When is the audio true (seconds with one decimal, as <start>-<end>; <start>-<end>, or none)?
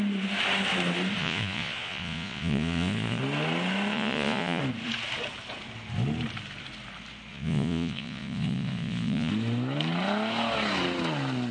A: 0.0-1.2; 3.2-3.9; 4.6-7.3; 9.3-11.5